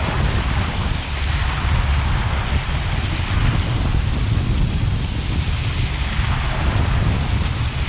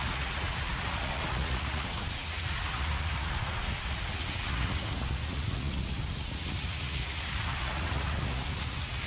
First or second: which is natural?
first